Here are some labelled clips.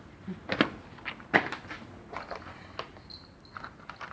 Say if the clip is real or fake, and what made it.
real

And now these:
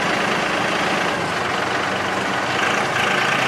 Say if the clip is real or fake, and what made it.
real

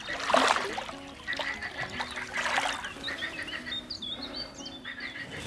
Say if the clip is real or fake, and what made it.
real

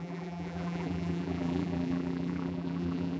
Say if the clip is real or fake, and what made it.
fake, vocoder, BigVGAN v2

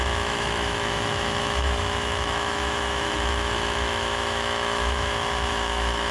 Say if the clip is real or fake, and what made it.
fake, autoencoder, DAC-VAE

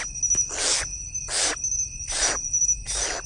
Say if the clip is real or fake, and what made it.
real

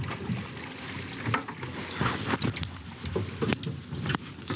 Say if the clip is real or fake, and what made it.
real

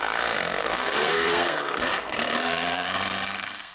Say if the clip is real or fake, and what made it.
fake, codec, SNAC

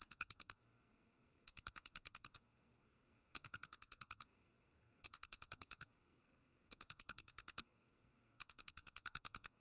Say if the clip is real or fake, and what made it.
fake, codec, SNAC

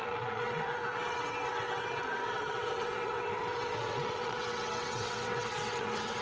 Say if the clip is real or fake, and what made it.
fake, vocoder, WaveNeXt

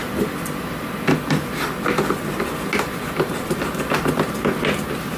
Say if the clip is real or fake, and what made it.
real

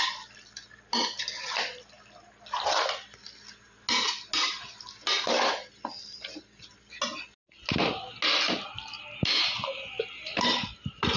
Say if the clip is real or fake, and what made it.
real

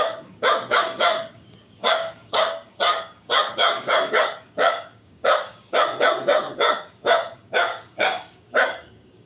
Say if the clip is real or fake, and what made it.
fake, codec, DAC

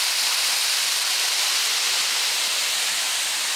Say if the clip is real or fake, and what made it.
real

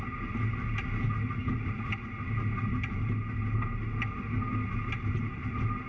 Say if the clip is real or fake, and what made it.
real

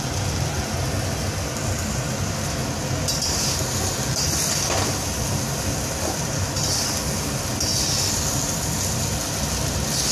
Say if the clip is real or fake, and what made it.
real